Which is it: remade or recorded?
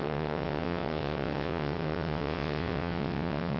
remade